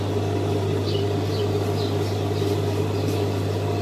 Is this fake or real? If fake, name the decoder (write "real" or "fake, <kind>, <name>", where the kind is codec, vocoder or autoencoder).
real